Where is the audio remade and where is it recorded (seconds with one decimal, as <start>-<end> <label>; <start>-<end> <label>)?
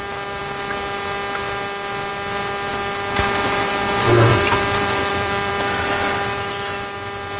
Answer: 0.0-4.3 recorded; 4.3-5.5 remade; 5.5-7.4 recorded